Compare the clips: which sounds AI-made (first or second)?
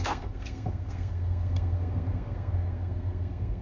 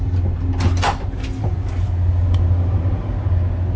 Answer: first